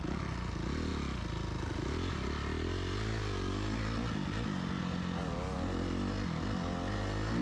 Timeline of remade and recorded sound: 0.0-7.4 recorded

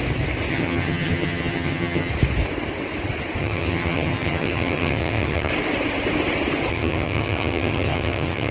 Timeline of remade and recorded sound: 0.0-0.5 recorded; 0.5-2.1 remade; 2.1-3.4 recorded; 3.4-5.5 remade; 5.5-6.7 recorded; 6.7-8.5 remade